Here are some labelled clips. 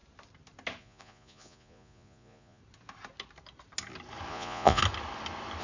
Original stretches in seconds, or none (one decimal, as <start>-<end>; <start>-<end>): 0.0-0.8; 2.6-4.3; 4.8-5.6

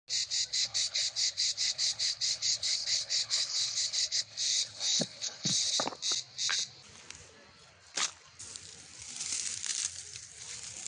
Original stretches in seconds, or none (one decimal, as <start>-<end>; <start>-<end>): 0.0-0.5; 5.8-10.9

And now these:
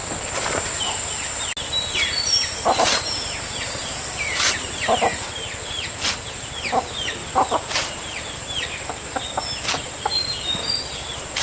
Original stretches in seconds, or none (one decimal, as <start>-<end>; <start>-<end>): 0.0-7.2; 8.4-11.4